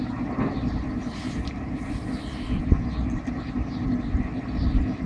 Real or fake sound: real